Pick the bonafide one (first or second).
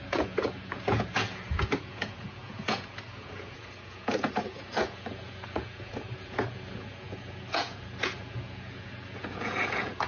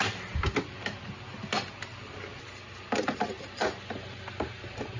second